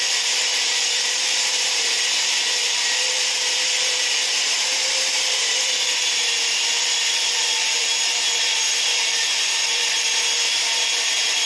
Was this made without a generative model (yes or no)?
no